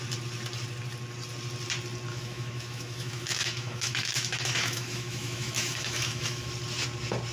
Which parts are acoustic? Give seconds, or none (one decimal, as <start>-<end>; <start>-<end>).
0.0-2.1; 6.5-7.3